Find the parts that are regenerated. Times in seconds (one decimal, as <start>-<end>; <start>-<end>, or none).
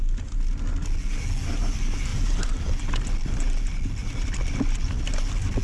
2.1-3.3; 4.0-5.1